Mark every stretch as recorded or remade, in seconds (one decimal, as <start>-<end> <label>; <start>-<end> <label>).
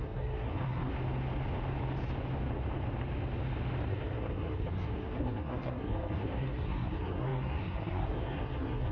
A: 0.0-0.9 remade; 0.9-3.9 recorded; 3.9-8.9 remade